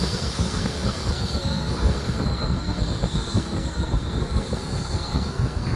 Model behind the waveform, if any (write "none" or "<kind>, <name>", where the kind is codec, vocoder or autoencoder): codec, SNAC